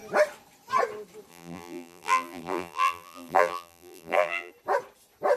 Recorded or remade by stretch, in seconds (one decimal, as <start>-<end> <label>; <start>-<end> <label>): 0.0-1.3 recorded; 1.3-4.5 remade; 4.5-5.4 recorded